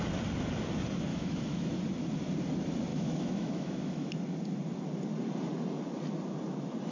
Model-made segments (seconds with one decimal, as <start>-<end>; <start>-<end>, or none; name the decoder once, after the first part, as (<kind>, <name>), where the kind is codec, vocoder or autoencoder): 1.1-1.7 (autoencoder, DAC-VAE); 2.9-4.1